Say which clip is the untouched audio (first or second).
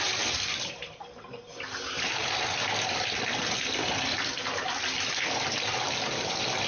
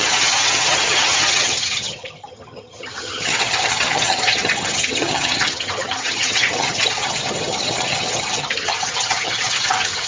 first